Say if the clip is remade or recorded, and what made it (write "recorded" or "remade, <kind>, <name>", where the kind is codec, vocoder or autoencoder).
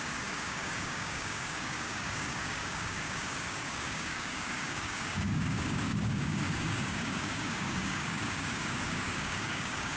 remade, codec, DAC